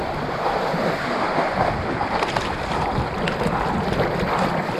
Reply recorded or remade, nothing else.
recorded